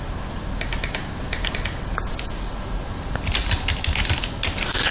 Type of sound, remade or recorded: recorded